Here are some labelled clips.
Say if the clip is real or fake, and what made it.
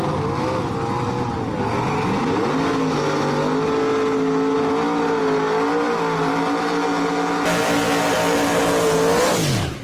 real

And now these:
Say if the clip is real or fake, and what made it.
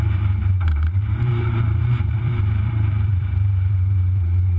fake, vocoder, BigVGAN v2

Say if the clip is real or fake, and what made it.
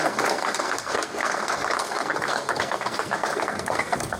fake, codec, SNAC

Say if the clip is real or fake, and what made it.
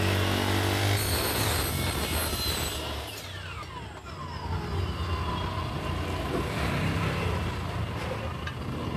real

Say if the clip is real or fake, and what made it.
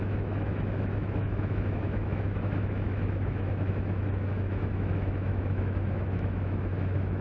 fake, autoencoder, DAC-VAE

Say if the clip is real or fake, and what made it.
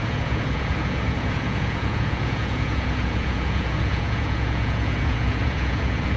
fake, vocoder, Vocos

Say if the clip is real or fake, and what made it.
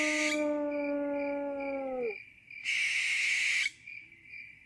real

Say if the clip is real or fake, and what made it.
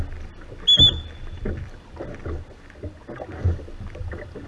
real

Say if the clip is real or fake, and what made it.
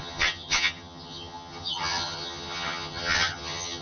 fake, vocoder, HiFi-GAN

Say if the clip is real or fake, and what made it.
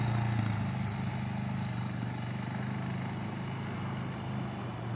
real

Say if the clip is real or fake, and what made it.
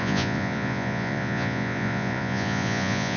fake, vocoder, Vocos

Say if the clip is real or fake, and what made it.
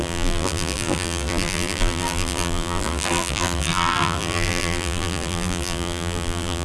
fake, vocoder, BigVGAN v2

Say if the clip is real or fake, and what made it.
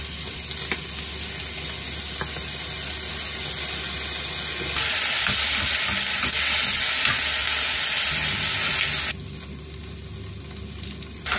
real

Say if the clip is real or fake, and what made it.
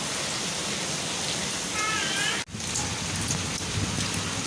real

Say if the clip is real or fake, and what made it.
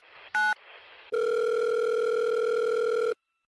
real